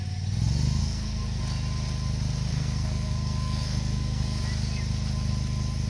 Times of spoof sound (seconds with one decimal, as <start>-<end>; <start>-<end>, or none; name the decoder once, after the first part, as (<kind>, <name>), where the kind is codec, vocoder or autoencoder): 0.8-1.4 (codec, SNAC); 2.5-4.4